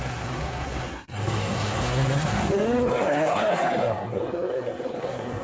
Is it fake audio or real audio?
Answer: fake